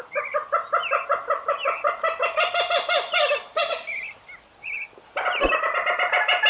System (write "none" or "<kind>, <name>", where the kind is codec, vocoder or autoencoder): none